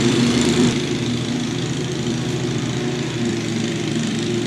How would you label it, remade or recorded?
remade